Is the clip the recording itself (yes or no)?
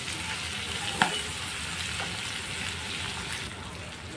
yes